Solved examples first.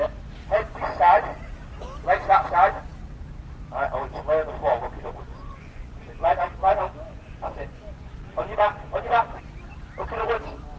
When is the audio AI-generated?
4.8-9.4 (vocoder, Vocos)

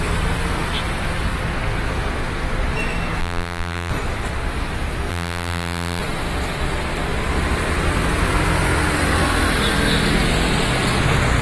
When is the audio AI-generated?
3.2-3.9 (vocoder, BigVGAN v2); 5.1-6.0

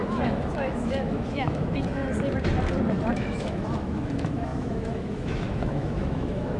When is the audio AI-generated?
0.0-2.0 (autoencoder, DAC-VAE); 3.1-6.6

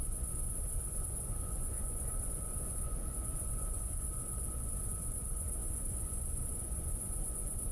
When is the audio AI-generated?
0.0-7.7 (vocoder, Vocos)

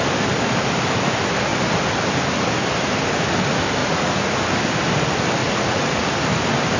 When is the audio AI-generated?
3.8-4.4 (vocoder, Vocos); 5.4-6.1

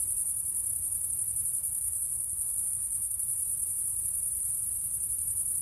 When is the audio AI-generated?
1.6-3.2 (codec, SNAC)

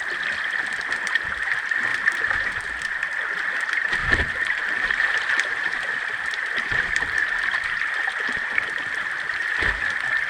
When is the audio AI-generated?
1.9-3.0 (vocoder, BigVGAN v2); 4.0-8.6

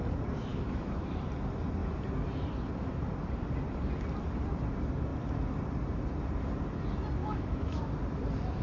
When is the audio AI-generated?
0.5-1.1 (autoencoder, DAC-VAE); 7.2-7.9